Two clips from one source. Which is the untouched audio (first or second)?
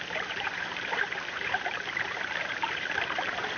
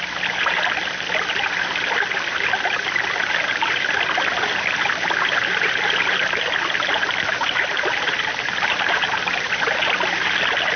second